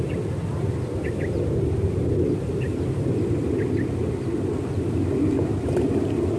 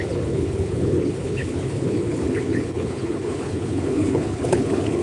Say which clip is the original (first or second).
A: first